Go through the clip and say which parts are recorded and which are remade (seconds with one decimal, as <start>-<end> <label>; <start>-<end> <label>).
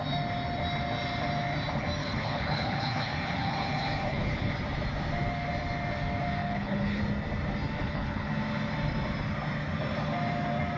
0.0-2.0 recorded; 2.0-4.5 remade; 4.5-6.4 recorded; 6.4-7.0 remade; 7.0-7.8 recorded; 7.8-8.3 remade; 8.3-10.8 recorded